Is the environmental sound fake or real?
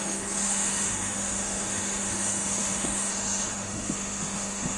fake